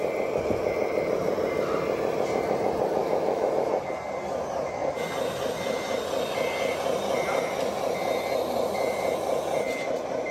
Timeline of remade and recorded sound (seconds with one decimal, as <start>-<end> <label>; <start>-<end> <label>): 0.0-3.0 recorded; 3.0-3.5 remade; 3.5-10.3 recorded